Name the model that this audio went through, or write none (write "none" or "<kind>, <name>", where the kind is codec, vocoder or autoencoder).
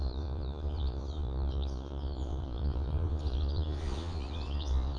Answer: vocoder, Vocos